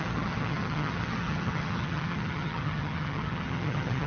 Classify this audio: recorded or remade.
remade